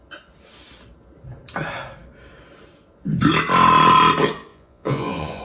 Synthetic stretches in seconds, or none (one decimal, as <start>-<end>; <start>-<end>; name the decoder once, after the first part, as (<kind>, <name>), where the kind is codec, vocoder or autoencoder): 4.5-5.4 (vocoder, Vocos)